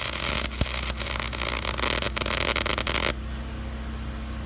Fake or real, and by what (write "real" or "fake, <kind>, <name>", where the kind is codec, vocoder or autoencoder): real